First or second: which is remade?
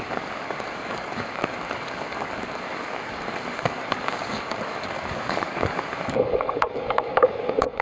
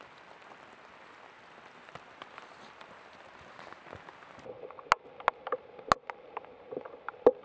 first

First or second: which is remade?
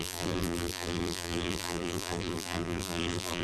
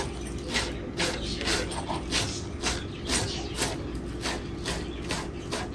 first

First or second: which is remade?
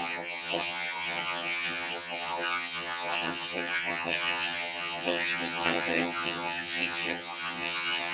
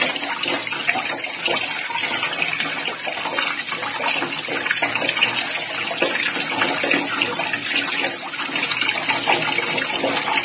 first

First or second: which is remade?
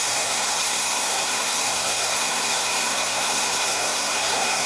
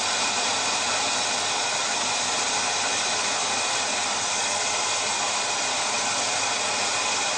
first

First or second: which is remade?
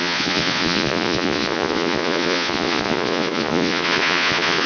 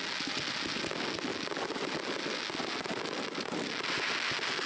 first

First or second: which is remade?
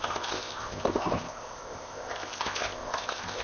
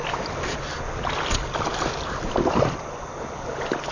first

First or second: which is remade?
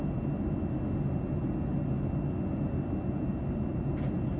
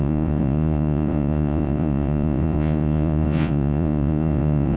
second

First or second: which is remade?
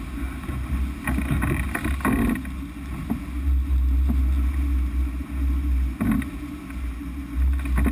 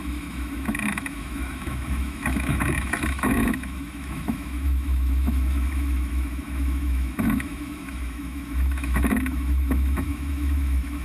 second